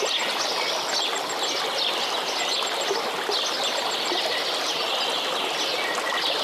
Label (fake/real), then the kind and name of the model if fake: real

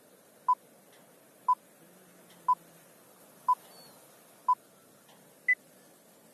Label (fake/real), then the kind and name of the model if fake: real